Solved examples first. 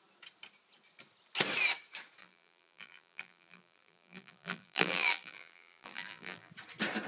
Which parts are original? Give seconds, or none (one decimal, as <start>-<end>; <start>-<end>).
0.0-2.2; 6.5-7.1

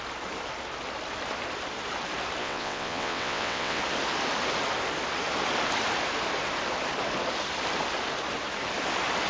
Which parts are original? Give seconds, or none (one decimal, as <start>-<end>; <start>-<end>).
0.0-2.4; 3.8-9.3

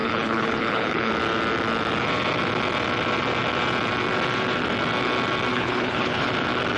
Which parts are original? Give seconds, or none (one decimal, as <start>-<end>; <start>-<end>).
1.1-5.5; 6.3-6.8

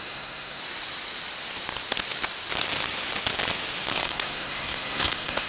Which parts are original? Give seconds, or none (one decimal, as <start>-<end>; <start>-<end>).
0.6-3.9

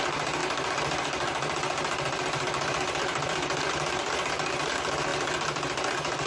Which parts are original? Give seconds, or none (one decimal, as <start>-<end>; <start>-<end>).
0.0-6.3

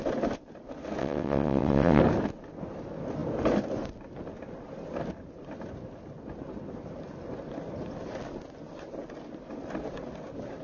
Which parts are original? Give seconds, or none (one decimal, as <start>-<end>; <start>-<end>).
0.0-1.0; 2.0-10.6